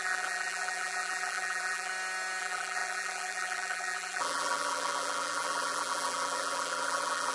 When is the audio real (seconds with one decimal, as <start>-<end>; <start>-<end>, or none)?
1.9-2.4